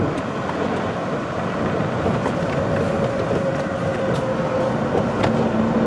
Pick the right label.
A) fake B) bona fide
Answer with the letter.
B